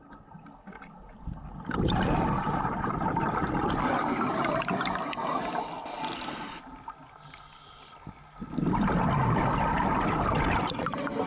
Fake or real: real